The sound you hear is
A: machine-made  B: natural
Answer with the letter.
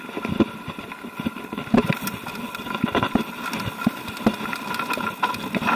B